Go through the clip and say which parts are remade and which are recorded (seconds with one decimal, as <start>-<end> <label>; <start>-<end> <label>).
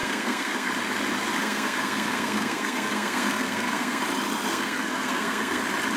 0.0-0.7 remade; 0.7-1.4 recorded; 1.4-4.0 remade; 4.0-4.5 recorded; 4.5-5.6 remade; 5.6-6.0 recorded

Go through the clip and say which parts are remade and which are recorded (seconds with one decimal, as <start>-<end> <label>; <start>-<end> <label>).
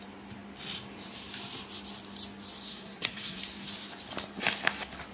0.0-2.7 recorded; 2.7-3.4 remade; 3.4-5.1 recorded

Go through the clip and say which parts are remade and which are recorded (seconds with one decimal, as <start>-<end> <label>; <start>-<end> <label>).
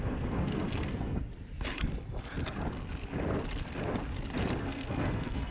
0.0-1.3 remade; 1.3-4.6 recorded; 4.6-5.5 remade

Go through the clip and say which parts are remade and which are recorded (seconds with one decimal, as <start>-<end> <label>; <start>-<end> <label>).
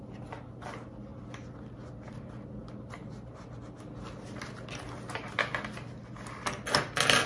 0.0-7.3 recorded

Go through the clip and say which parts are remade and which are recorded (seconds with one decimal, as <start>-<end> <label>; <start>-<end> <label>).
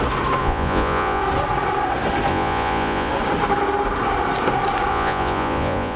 0.0-0.4 recorded; 0.4-1.2 remade; 1.2-2.3 recorded; 2.3-3.1 remade; 3.1-4.9 recorded; 4.9-6.0 remade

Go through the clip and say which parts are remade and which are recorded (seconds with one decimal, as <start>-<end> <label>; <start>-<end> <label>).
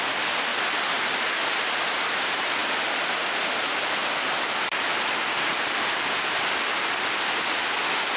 0.0-8.2 recorded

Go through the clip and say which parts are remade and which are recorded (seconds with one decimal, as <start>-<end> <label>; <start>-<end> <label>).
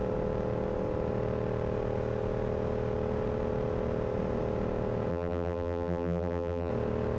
0.0-5.1 recorded; 5.1-6.7 remade; 6.7-7.2 recorded